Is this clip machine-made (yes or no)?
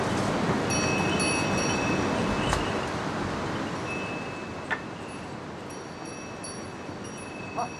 no